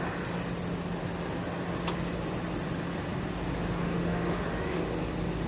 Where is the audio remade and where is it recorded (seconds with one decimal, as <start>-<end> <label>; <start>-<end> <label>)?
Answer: 0.0-3.8 recorded; 3.8-4.8 remade; 4.8-5.5 recorded